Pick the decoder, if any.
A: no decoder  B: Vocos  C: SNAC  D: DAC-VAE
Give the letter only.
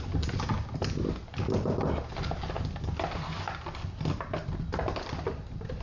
A